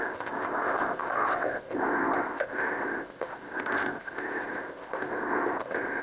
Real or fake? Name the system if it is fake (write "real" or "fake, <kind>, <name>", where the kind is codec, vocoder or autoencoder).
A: fake, codec, ZipCodec